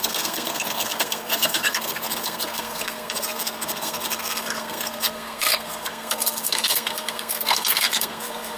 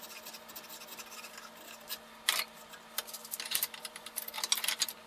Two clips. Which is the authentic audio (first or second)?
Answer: second